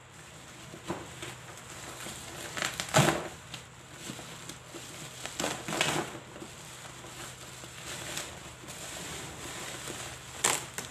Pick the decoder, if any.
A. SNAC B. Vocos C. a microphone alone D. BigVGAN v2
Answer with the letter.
C